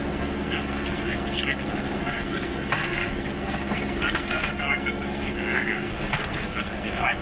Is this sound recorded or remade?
remade